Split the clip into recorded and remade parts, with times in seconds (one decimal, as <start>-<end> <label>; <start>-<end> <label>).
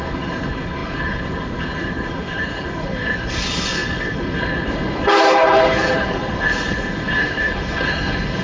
0.0-8.4 remade